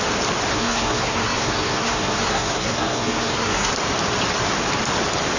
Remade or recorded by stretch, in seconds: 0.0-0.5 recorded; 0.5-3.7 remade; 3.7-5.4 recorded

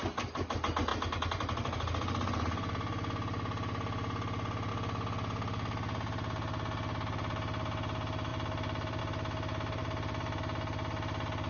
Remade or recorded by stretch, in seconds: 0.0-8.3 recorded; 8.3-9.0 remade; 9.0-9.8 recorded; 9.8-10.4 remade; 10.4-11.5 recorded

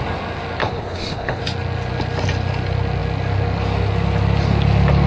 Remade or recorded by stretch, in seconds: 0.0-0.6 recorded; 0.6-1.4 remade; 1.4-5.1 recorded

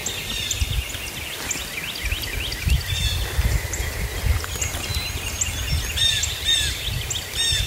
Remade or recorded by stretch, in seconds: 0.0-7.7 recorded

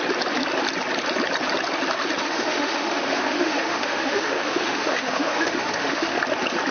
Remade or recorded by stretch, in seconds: 0.0-2.2 recorded; 2.2-6.2 remade; 6.2-6.7 recorded

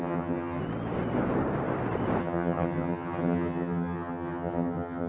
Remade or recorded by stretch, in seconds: 0.0-0.6 remade; 0.6-2.2 recorded; 2.2-5.1 remade